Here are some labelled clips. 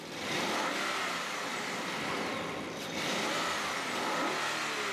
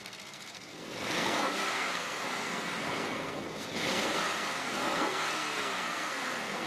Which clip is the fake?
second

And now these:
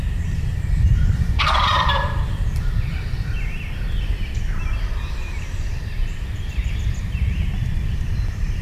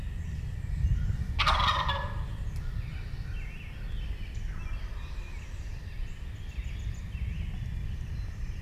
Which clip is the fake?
first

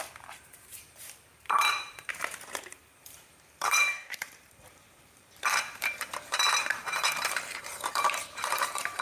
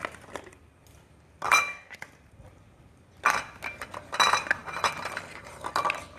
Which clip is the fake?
first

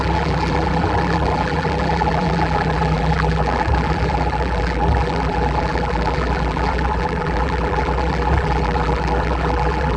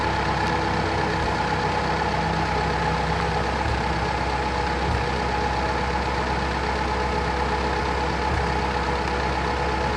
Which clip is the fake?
first